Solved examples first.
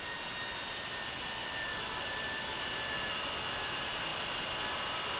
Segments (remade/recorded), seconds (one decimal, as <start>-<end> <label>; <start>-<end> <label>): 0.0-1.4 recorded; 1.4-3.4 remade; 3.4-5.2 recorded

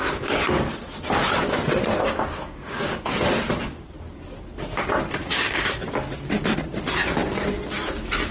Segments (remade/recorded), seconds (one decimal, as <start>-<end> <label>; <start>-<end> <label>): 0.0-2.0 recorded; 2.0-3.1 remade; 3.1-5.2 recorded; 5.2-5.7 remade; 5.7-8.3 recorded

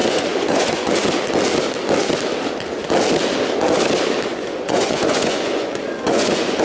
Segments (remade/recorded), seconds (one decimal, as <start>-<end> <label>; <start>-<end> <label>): 0.0-0.9 remade; 0.9-4.3 recorded; 4.3-6.6 remade

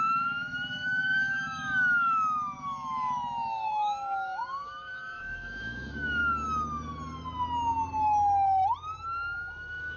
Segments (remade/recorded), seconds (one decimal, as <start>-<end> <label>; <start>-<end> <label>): 0.0-6.2 remade; 6.2-9.5 recorded; 9.5-10.0 remade

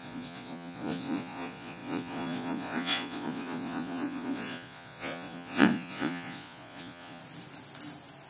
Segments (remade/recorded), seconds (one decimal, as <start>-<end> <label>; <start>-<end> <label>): 0.0-7.2 remade; 7.2-8.3 recorded

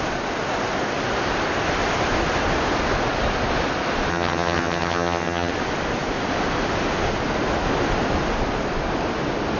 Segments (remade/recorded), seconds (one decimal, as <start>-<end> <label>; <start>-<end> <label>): 0.0-4.1 recorded; 4.1-5.5 remade; 5.5-9.6 recorded

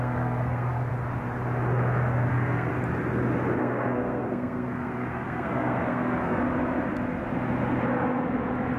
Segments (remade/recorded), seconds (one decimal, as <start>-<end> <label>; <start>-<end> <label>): 0.0-0.9 remade; 0.9-2.3 recorded; 2.3-2.7 remade; 2.7-3.6 recorded; 3.6-6.4 remade; 6.4-8.8 recorded